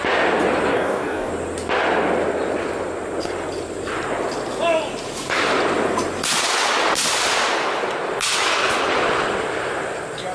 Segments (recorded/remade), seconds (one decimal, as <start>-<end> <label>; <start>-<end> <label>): 0.0-0.7 recorded; 0.7-1.3 remade; 1.3-10.3 recorded